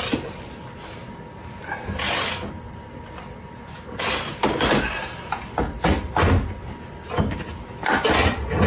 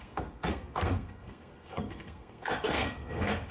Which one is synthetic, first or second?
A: second